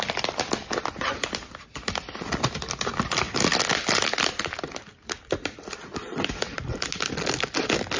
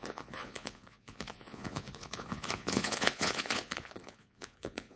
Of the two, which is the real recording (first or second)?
first